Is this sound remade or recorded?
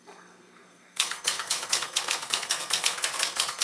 remade